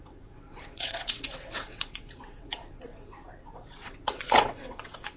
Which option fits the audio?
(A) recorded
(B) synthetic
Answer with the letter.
B